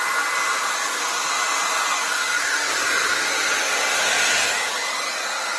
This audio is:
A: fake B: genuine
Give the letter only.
B